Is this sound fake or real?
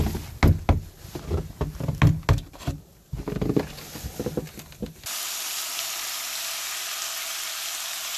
real